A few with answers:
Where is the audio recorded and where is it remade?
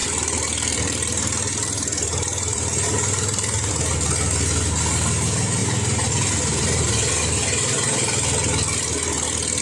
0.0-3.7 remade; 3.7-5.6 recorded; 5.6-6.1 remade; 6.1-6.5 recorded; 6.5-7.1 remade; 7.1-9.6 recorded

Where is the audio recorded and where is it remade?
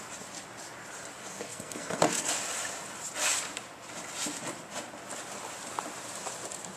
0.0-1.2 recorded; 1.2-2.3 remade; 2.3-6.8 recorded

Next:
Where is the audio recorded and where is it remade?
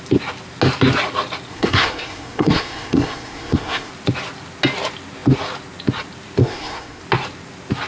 0.0-1.5 recorded; 1.5-3.9 remade; 3.9-6.4 recorded; 6.4-7.0 remade; 7.0-7.9 recorded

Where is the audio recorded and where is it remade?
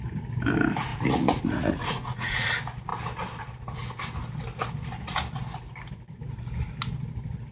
0.0-0.9 recorded; 0.9-2.5 remade; 2.5-7.5 recorded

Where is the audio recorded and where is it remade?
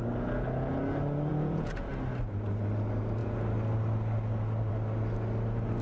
0.0-1.3 recorded; 1.3-1.9 remade; 1.9-5.8 recorded